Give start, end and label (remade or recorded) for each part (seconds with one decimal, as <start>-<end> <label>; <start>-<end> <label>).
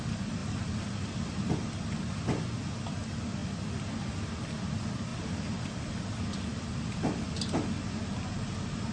0.0-0.4 recorded; 0.4-1.5 remade; 1.5-5.1 recorded; 5.1-6.2 remade; 6.2-8.9 recorded